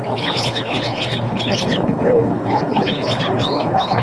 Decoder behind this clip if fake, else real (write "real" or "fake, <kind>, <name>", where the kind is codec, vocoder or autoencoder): fake, codec, HILCodec